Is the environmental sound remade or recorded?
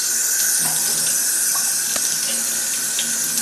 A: recorded